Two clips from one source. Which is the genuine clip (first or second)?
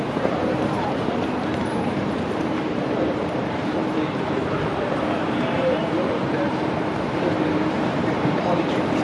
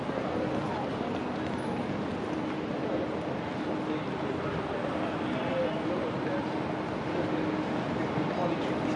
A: second